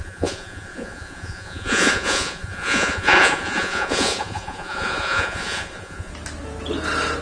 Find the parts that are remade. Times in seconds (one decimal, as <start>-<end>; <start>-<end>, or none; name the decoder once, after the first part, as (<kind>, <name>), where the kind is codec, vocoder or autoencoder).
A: 0.0-6.1 (vocoder, Vocos)